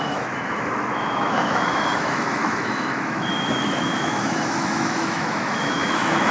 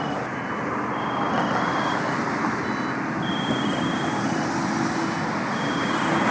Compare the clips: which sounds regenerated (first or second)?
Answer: first